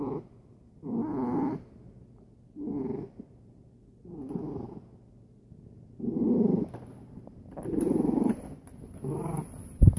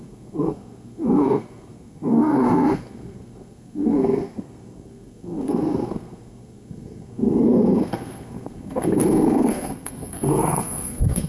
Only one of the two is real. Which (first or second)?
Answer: first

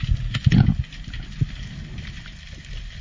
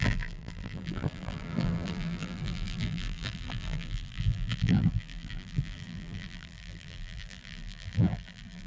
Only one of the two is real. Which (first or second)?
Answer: first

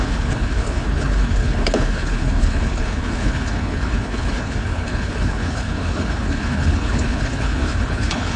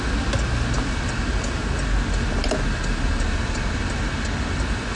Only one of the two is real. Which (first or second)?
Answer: second